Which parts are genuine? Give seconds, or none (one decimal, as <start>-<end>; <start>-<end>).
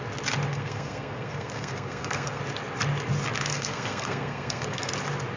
0.0-0.5; 2.4-3.5; 4.9-5.4